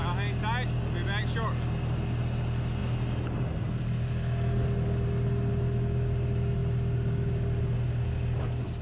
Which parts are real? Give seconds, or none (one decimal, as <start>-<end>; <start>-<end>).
0.0-8.8